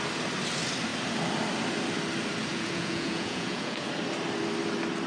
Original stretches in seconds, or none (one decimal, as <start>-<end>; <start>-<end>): 0.0-2.5; 3.9-5.1